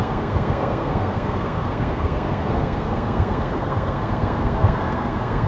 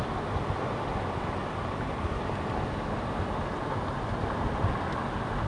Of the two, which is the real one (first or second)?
second